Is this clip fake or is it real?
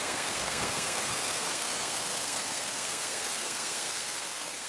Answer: fake